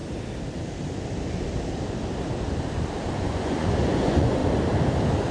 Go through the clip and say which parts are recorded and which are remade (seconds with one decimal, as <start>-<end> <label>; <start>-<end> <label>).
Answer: 0.0-3.1 recorded; 3.1-4.4 remade; 4.4-5.3 recorded